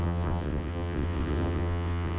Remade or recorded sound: remade